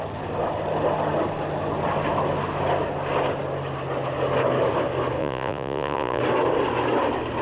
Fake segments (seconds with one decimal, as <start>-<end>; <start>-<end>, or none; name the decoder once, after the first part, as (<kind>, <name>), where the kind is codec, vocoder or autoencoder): 5.2-6.2 (vocoder, Vocos)